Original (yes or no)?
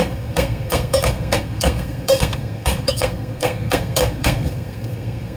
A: no